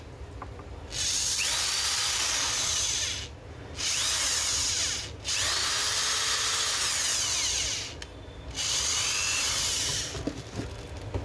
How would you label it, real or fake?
real